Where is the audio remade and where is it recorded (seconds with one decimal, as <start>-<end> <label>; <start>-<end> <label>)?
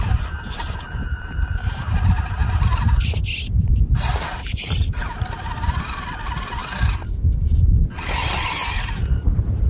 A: 0.0-2.4 remade; 2.4-3.6 recorded; 3.6-6.6 remade; 6.6-8.8 recorded; 8.8-9.7 remade